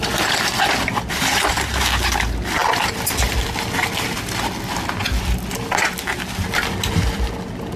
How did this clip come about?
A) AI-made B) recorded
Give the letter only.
B